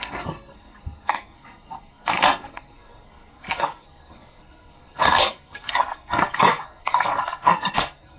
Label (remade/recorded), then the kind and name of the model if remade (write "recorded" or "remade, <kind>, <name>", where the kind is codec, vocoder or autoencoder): remade, codec, SNAC